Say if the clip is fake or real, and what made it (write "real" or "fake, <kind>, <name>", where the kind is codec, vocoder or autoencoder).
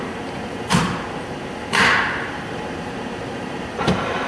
fake, vocoder, BigVGAN v2